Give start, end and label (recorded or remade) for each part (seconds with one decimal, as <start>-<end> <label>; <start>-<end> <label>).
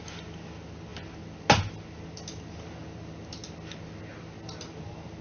0.0-5.2 recorded